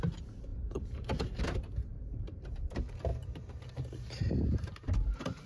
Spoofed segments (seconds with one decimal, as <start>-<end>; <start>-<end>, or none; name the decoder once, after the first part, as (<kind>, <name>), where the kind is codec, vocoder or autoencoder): 0.5-1.4 (vocoder, BigVGAN v2); 1.8-2.5; 3.1-5.5